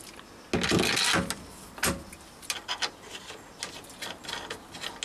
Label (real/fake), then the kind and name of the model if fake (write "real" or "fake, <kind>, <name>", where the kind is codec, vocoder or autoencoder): real